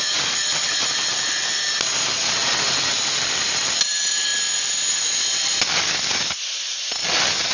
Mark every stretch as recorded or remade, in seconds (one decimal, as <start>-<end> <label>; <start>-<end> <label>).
0.0-7.5 recorded